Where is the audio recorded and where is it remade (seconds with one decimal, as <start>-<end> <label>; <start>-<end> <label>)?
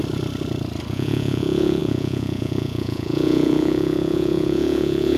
0.0-0.9 recorded; 0.9-5.2 remade